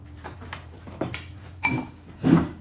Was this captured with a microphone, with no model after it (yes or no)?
no